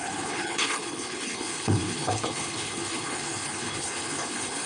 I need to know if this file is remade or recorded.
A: remade